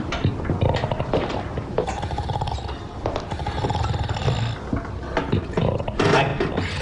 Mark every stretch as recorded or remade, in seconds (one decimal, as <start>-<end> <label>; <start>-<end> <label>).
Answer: 0.0-6.8 recorded